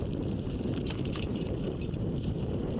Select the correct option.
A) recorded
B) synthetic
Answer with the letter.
B